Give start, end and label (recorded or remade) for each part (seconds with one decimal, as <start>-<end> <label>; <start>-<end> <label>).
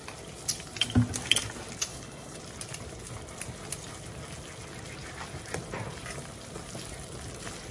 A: 0.0-1.9 recorded; 1.9-2.4 remade; 2.4-7.7 recorded